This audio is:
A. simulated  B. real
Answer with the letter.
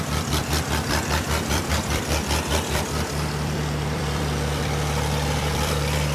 A